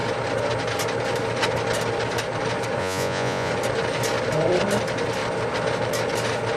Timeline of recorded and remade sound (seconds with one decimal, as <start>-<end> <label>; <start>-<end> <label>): 0.0-2.8 recorded; 2.8-3.5 remade; 3.5-6.6 recorded